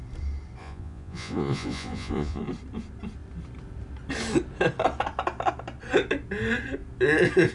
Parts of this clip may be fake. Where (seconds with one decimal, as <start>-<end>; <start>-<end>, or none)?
0.6-2.4